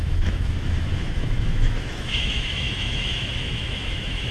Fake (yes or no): yes